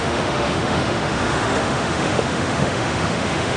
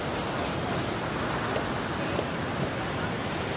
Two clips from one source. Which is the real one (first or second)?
second